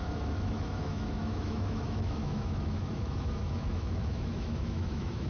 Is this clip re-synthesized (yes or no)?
yes